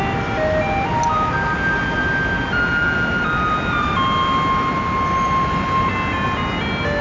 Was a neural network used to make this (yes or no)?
no